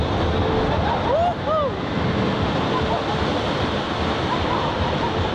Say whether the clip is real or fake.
real